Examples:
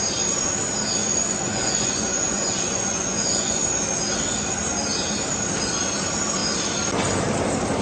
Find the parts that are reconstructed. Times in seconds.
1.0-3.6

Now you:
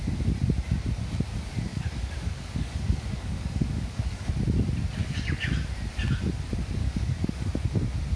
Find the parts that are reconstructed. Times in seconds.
1.7-4.3; 5.0-5.5; 6.8-7.5